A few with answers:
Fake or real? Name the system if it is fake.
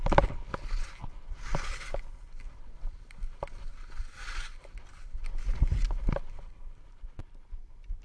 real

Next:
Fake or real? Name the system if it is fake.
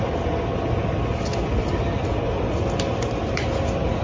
real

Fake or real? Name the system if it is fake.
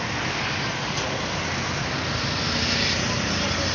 real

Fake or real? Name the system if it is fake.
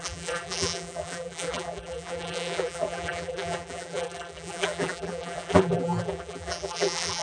fake, vocoder, BigVGAN v2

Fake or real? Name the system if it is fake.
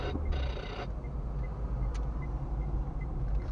real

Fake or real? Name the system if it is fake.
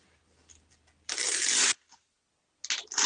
real